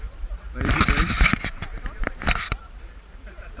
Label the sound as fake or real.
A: fake